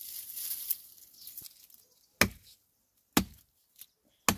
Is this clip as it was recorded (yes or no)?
yes